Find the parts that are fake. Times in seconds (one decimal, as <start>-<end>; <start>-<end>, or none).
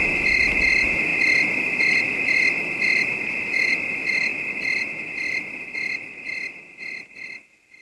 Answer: none